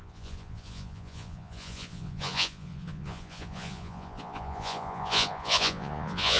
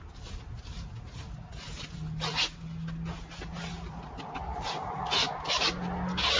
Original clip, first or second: second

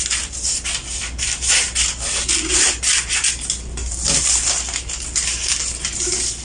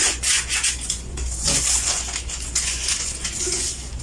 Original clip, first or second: first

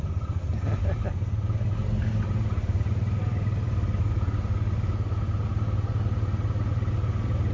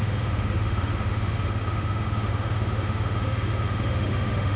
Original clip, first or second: first